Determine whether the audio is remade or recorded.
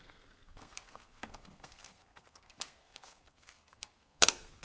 remade